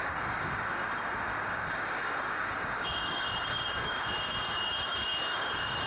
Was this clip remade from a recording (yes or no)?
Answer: yes